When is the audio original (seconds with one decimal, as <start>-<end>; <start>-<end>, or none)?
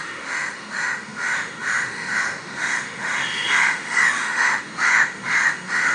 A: none